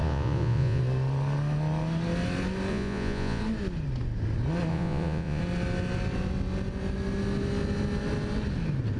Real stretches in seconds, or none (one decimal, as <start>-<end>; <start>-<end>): 0.8-2.7; 3.4-4.7; 5.4-9.0